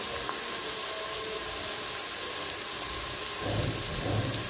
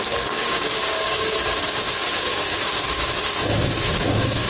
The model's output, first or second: second